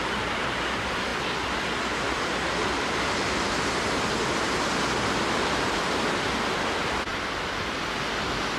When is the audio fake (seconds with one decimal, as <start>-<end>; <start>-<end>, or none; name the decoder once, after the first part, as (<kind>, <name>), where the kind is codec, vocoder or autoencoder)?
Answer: none

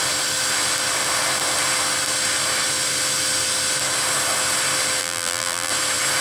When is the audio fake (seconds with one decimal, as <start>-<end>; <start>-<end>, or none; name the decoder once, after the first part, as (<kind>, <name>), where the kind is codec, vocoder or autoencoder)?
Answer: 5.0-5.7 (vocoder, BigVGAN v2)

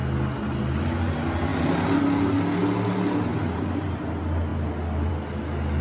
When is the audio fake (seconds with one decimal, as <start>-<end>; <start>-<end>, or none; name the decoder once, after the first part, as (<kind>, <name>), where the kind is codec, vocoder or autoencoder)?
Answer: 3.3-4.0 (vocoder, BigVGAN v2)